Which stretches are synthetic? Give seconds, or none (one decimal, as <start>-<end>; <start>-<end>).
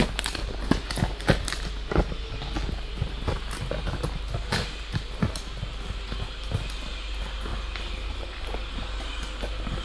none